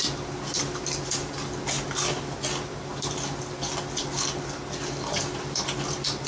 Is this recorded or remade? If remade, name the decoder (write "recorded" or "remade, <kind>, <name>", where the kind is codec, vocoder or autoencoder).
remade, vocoder, BigVGAN v2